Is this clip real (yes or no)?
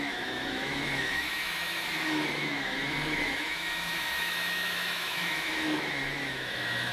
no